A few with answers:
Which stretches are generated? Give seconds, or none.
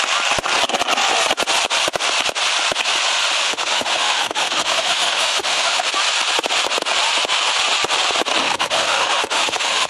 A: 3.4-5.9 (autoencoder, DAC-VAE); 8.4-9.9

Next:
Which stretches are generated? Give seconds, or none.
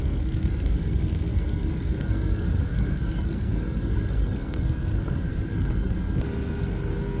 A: 0.0-6.0 (codec, SNAC); 6.6-7.2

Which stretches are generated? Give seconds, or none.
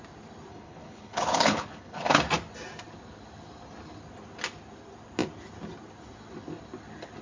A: 0.5-2.2 (codec, HILCodec)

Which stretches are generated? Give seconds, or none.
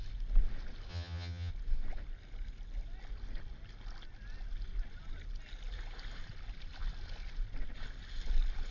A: 0.9-1.5 (vocoder, HiFi-GAN)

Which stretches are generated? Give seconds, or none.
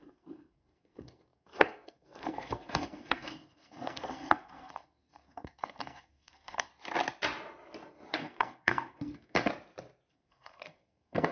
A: 0.0-6.7 (codec, SNAC); 8.1-9.5; 10.1-11.3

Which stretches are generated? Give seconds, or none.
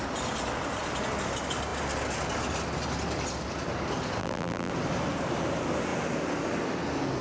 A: 4.2-4.7 (vocoder, BigVGAN v2)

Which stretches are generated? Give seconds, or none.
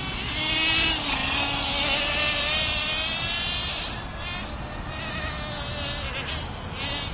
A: none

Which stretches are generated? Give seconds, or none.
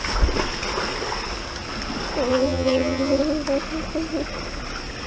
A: 2.3-3.2 (vocoder, HiFi-GAN)